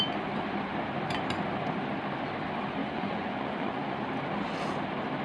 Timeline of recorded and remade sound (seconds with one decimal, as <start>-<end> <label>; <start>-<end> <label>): 0.0-2.8 recorded; 2.8-4.0 remade; 4.0-5.2 recorded